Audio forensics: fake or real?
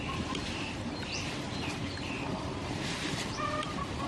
fake